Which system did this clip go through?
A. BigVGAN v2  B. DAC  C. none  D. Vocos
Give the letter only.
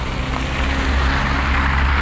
C